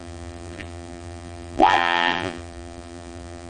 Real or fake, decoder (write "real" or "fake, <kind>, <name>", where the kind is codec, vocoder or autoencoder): fake, vocoder, BigVGAN v2